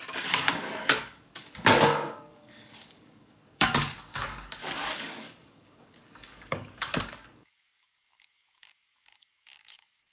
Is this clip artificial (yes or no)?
yes